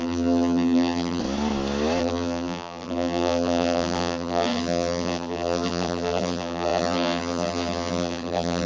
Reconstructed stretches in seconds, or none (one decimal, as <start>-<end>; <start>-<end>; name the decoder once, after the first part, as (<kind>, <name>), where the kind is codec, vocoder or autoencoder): 0.0-1.2 (vocoder, BigVGAN v2); 2.0-8.7